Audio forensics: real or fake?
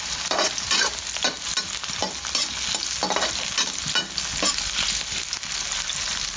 real